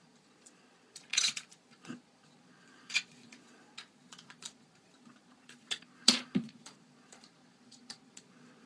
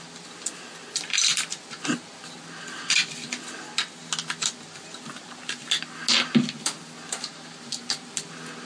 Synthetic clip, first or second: first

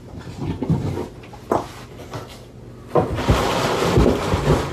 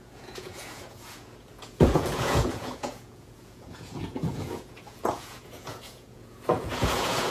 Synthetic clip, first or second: second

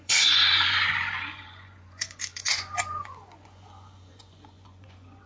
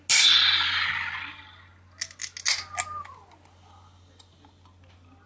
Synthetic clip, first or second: first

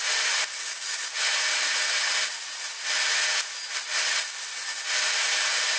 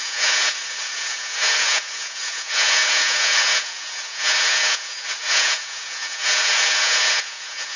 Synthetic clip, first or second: second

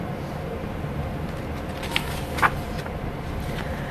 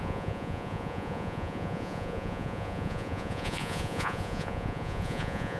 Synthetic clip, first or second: second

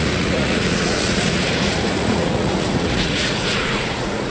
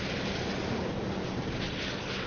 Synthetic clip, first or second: first